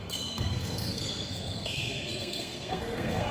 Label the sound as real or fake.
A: fake